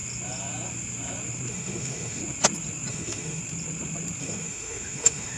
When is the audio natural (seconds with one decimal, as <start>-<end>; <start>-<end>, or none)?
0.0-1.5; 2.2-2.9; 3.4-4.2